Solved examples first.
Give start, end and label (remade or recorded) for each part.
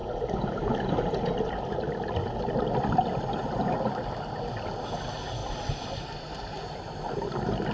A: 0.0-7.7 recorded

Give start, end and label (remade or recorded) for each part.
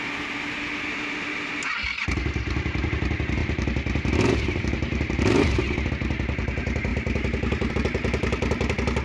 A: 0.0-3.4 recorded; 3.4-5.9 remade; 5.9-6.9 recorded; 6.9-7.7 remade; 7.7-9.0 recorded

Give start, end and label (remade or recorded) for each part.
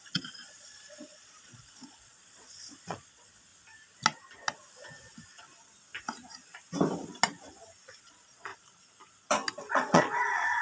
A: 0.0-3.5 remade; 3.5-8.0 recorded; 8.0-8.5 remade; 8.5-9.7 recorded; 9.7-10.6 remade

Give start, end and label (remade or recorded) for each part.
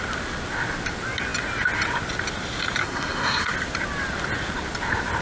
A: 0.0-2.8 recorded; 2.8-3.5 remade; 3.5-5.2 recorded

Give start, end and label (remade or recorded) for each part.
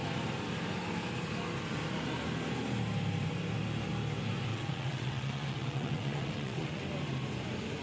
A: 0.0-4.5 recorded; 4.5-6.8 remade; 6.8-7.8 recorded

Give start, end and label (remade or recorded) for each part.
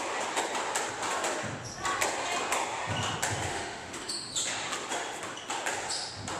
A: 0.0-3.5 recorded; 3.5-4.3 remade; 4.3-6.4 recorded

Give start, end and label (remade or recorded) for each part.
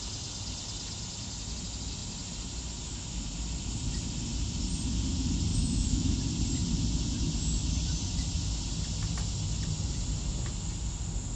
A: 0.0-5.5 recorded; 5.5-6.1 remade; 6.1-11.4 recorded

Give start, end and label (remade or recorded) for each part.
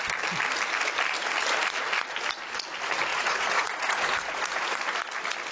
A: 0.0-3.1 recorded; 3.1-4.8 remade; 4.8-5.5 recorded